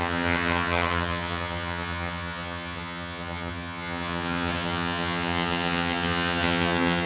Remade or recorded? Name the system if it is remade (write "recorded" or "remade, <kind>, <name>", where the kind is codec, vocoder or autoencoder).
remade, vocoder, HiFi-GAN